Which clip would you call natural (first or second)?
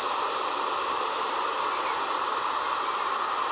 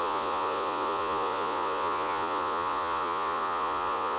first